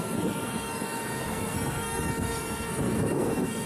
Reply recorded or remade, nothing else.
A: remade